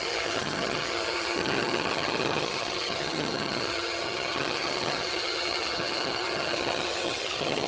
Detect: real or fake fake